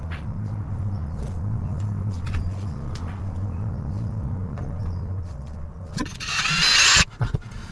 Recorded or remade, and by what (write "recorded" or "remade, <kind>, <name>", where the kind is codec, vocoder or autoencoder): remade, vocoder, Vocos